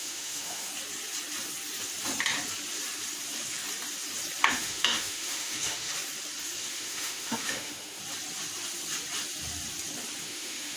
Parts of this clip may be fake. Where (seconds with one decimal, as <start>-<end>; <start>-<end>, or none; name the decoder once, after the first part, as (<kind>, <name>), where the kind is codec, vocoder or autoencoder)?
0.0-0.7 (autoencoder, DAC-VAE); 4.5-5.9; 6.6-8.0; 10.2-10.8